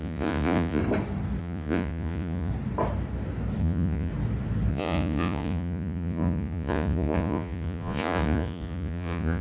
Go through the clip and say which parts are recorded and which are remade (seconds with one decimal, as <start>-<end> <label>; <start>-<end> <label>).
0.0-0.8 remade; 0.8-1.4 recorded; 1.4-2.5 remade; 2.5-3.6 recorded; 3.6-4.1 remade; 4.1-4.7 recorded; 4.7-9.4 remade